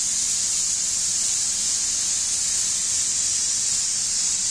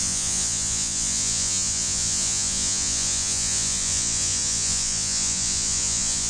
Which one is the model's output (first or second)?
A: second